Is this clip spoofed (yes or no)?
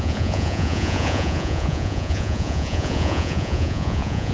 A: yes